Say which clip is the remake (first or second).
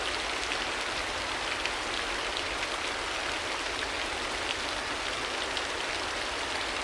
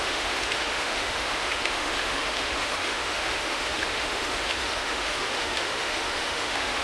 second